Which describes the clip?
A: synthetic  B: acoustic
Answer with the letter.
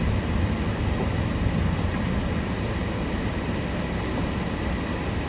B